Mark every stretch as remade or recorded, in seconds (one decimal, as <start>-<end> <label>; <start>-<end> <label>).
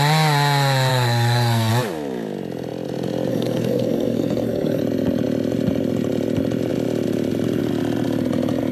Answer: 0.0-0.9 recorded; 0.9-1.7 remade; 1.7-3.3 recorded; 3.3-4.8 remade; 4.8-8.7 recorded